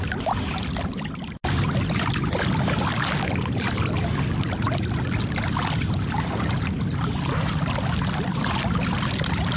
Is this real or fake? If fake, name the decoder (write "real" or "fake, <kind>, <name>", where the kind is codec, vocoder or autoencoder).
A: real